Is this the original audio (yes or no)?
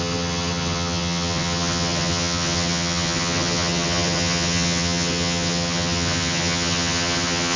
no